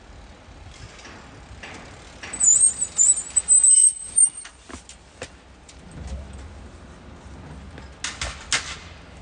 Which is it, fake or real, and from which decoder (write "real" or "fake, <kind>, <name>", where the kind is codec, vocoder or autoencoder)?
real